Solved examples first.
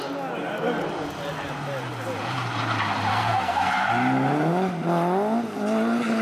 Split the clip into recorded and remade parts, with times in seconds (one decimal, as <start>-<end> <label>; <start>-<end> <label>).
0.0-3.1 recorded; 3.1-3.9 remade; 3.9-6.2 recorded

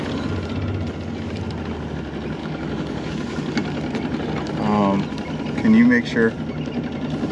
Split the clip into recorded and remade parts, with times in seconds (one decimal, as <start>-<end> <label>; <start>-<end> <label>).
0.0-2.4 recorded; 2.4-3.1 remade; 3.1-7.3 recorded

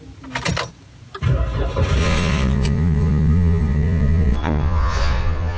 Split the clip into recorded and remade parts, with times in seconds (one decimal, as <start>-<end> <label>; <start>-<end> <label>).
0.0-2.0 recorded; 2.0-5.6 remade